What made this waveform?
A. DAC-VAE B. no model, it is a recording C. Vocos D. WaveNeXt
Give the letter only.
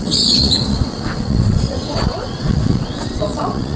D